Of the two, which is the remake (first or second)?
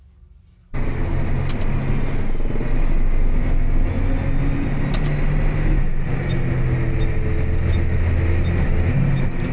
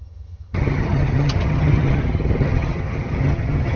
second